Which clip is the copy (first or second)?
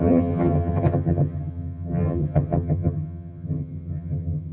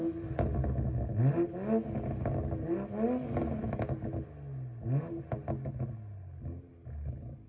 first